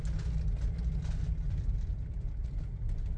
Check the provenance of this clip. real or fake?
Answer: real